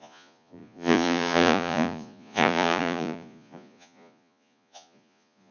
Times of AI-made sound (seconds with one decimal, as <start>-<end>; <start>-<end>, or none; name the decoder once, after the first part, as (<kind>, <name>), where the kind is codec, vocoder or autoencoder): 0.0-5.5 (vocoder, Vocos)